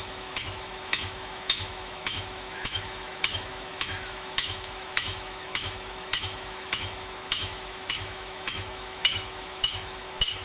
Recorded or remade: remade